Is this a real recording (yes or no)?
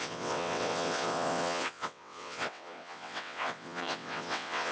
no